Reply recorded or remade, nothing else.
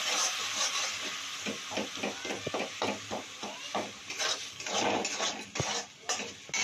recorded